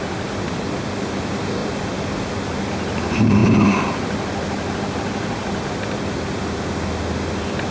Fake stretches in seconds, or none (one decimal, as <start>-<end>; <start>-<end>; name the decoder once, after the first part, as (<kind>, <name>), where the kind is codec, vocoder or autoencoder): 1.6-2.2 (vocoder, BigVGAN v2)